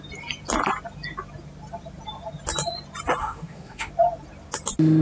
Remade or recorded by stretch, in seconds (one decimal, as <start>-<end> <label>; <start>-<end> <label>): 0.0-3.2 recorded; 3.2-3.9 remade; 3.9-5.0 recorded

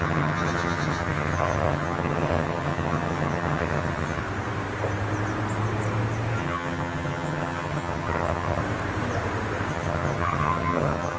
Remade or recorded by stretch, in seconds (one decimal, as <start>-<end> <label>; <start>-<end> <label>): 0.0-4.2 remade; 4.2-6.4 recorded; 6.4-8.6 remade; 8.6-9.7 recorded; 9.7-11.2 remade